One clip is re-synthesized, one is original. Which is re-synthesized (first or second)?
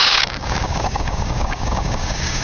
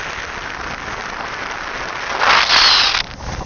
first